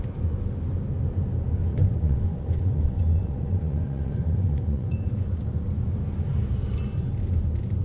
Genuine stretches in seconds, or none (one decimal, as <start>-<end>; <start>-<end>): 0.0-1.7; 5.4-7.8